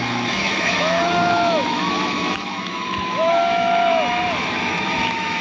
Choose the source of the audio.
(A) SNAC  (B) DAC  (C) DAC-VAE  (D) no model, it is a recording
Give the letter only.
C